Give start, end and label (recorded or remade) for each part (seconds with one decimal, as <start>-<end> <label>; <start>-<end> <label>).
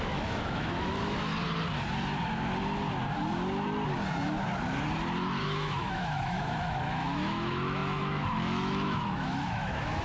0.0-1.3 remade; 1.3-5.4 recorded; 5.4-10.0 remade